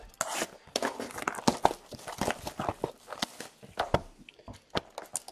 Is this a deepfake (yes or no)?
no